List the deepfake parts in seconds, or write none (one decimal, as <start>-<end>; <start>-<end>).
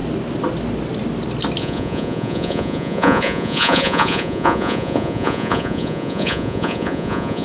1.6-7.4